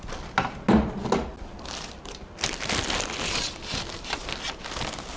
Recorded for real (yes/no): yes